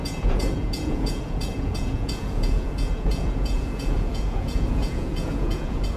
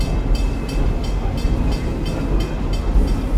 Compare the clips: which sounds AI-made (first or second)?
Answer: first